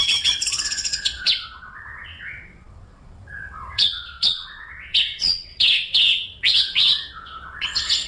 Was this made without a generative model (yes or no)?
no